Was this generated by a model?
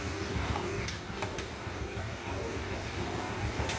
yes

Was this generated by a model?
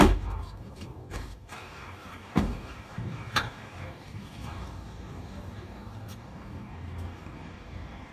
yes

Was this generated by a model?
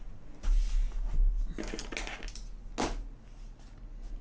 no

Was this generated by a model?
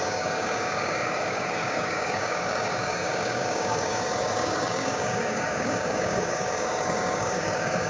yes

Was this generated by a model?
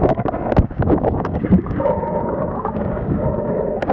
yes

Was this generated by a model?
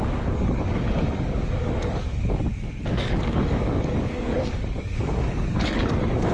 yes